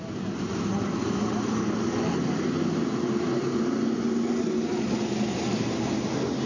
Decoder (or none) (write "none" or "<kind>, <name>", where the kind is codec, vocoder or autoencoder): none